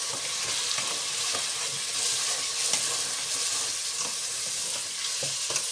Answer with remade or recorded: recorded